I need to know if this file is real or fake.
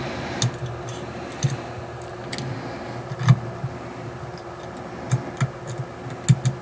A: real